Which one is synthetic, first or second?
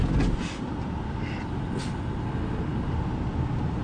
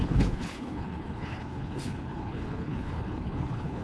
second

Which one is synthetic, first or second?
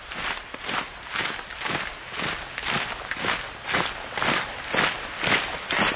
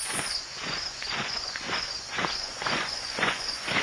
second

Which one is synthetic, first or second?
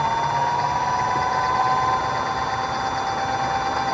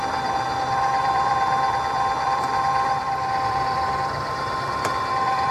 second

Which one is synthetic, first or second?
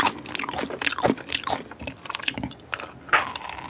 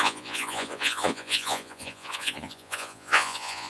second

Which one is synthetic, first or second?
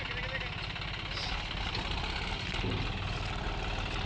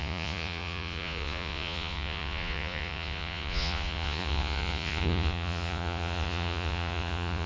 second